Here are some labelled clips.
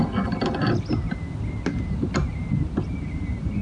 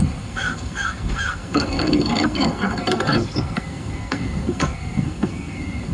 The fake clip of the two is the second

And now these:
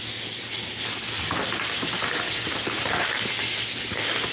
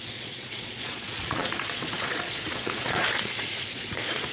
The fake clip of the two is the second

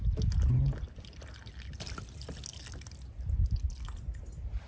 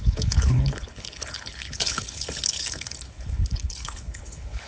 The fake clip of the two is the second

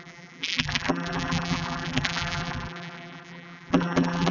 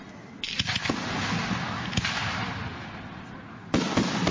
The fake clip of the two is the first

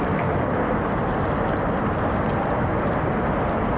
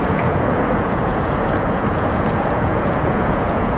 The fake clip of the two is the second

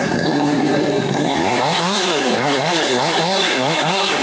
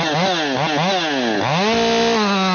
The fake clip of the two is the first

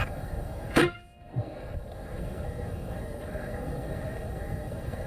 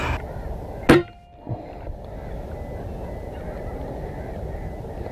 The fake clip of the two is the first